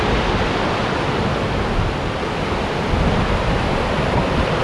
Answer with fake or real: real